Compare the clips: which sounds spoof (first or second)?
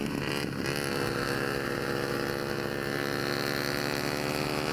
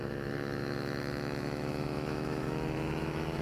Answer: second